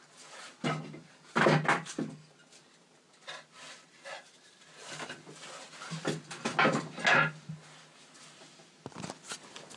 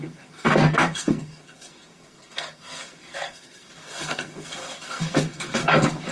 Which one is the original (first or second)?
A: first